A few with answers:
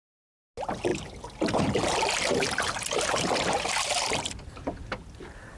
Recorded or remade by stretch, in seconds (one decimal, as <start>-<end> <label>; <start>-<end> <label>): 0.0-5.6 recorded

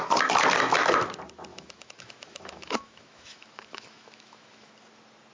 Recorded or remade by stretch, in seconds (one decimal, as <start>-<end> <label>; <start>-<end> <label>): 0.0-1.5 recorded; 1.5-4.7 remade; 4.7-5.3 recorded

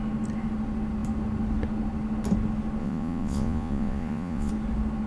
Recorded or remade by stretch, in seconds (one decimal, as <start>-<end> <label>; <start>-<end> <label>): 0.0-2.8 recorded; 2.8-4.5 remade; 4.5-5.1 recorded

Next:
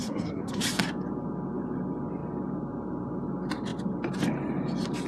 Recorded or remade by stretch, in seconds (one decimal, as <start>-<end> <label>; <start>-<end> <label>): 0.0-0.6 remade; 0.6-5.1 recorded